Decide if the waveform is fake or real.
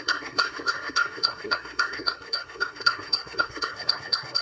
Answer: fake